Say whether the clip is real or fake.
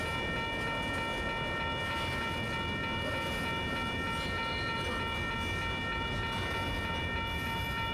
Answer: real